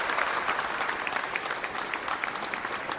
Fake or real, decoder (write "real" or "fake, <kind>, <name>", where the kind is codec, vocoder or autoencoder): real